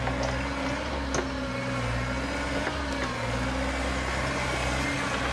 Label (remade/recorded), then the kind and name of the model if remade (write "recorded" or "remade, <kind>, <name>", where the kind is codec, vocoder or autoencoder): recorded